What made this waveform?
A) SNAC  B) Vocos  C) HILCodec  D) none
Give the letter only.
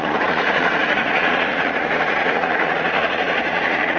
B